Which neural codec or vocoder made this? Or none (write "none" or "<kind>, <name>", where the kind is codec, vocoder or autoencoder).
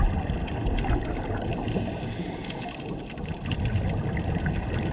none